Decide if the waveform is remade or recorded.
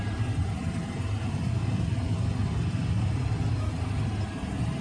recorded